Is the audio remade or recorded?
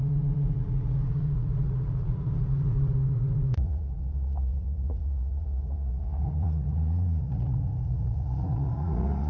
remade